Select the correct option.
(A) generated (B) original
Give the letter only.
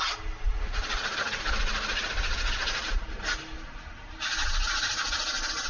B